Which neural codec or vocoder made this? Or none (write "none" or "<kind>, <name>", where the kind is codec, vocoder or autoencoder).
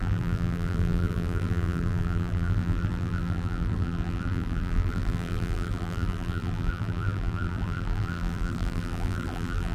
vocoder, BigVGAN v2